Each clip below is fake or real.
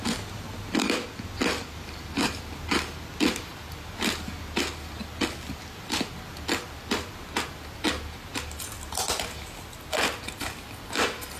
real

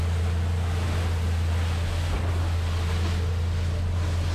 real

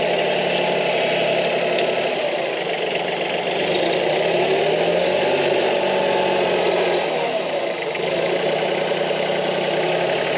real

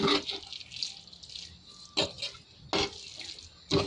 real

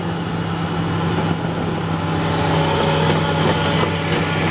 real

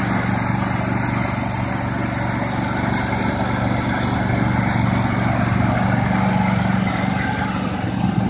real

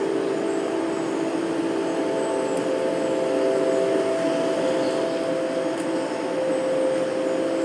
real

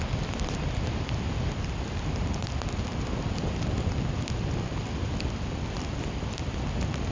fake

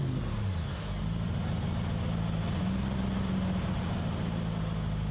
real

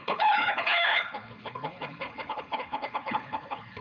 fake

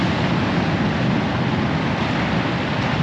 real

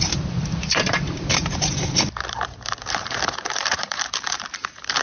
fake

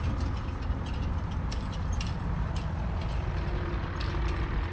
real